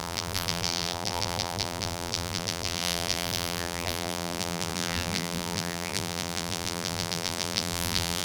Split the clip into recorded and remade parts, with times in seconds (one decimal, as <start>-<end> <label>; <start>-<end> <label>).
0.0-8.2 remade